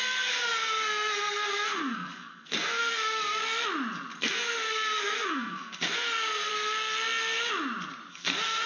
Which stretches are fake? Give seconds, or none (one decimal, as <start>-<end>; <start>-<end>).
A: 0.0-3.4; 4.2-6.5; 8.1-8.7